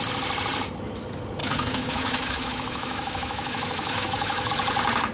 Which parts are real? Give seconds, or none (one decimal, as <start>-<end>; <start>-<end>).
0.0-1.4; 4.5-5.1